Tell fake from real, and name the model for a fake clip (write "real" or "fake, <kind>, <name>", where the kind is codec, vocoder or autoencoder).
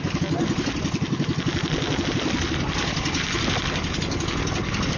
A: real